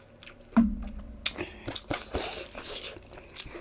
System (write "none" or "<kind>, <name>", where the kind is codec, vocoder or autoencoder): none